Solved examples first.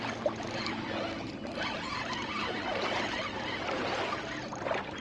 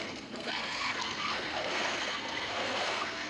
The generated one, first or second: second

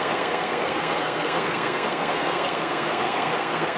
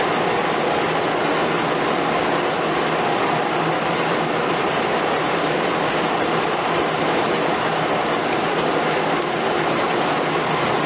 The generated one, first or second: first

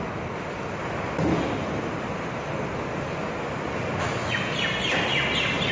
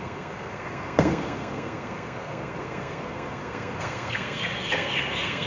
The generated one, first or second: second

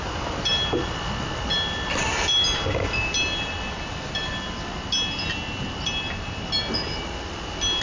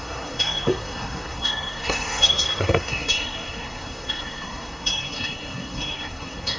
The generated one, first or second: second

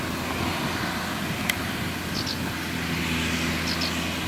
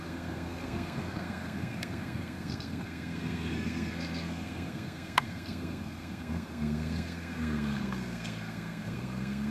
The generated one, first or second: second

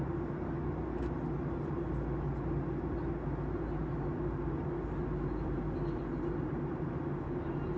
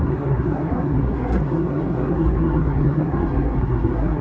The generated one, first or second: second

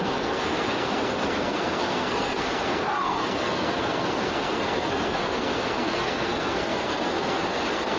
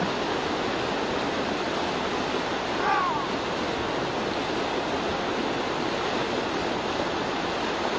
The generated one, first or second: first